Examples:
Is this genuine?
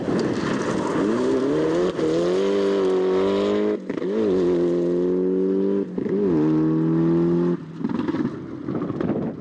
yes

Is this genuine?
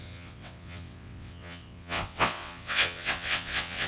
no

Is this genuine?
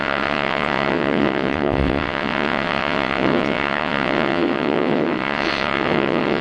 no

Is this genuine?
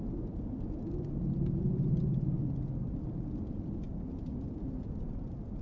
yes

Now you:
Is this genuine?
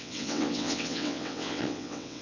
no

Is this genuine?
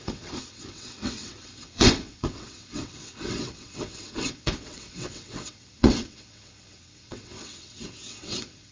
no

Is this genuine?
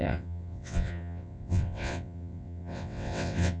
no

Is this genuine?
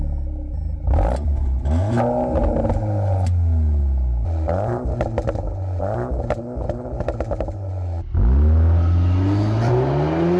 yes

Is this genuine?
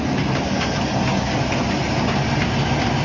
yes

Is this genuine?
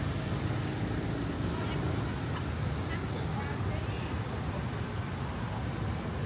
yes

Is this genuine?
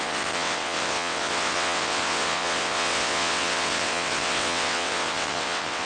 no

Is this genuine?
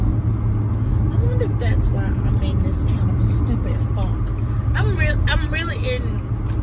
yes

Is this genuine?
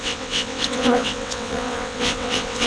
no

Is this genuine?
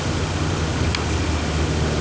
yes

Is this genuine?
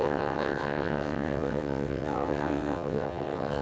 no